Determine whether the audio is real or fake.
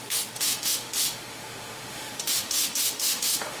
fake